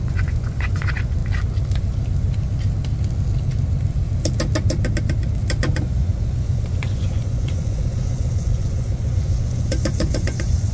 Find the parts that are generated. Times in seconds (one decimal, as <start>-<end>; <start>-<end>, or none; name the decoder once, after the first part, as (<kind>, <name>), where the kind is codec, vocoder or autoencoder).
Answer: 0.0-1.2 (vocoder, Vocos); 5.6-10.7